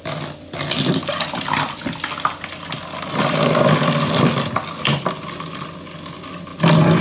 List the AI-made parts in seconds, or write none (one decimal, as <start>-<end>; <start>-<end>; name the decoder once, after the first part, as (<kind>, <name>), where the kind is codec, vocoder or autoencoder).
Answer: none